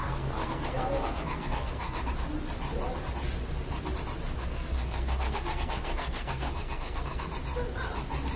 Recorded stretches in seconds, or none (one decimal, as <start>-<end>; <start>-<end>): 2.1-4.4; 7.3-8.4